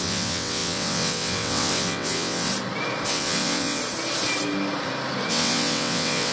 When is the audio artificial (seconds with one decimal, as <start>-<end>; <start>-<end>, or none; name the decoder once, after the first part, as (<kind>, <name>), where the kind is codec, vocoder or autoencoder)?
0.0-2.5 (vocoder, WaveNeXt); 3.1-3.8; 5.3-6.3